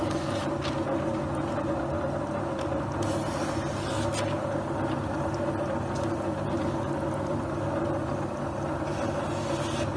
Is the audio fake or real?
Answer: real